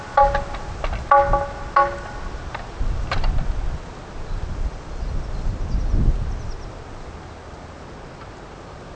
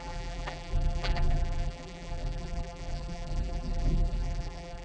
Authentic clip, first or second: first